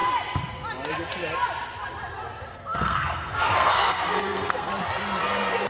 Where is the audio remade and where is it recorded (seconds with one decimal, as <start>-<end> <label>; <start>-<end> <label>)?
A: 0.0-2.5 recorded; 2.5-4.7 remade; 4.7-5.7 recorded